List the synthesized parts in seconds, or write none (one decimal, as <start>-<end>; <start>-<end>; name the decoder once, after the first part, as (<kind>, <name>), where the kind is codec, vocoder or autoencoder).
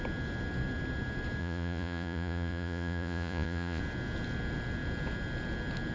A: 1.4-3.8 (vocoder, Vocos)